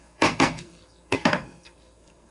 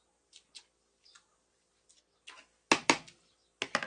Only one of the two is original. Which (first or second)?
second